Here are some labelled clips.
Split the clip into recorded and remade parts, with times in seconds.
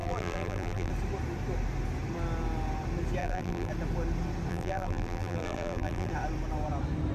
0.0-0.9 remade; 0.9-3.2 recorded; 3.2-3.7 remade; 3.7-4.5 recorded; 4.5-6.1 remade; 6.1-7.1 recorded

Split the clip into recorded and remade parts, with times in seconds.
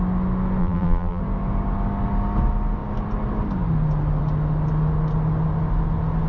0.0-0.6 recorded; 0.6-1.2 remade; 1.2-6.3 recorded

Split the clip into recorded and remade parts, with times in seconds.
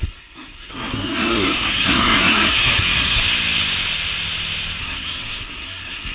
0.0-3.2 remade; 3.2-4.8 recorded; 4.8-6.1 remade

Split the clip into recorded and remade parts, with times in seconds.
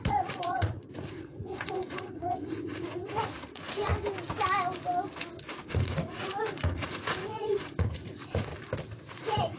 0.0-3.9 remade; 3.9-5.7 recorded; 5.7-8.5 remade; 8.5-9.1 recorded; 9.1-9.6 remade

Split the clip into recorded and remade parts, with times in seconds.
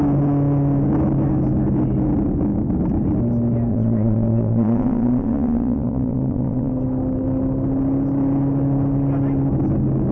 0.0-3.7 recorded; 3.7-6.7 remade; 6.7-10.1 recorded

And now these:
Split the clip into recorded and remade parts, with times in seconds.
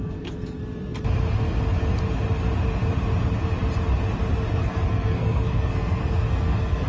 0.0-0.6 remade; 0.6-4.5 recorded; 4.5-6.9 remade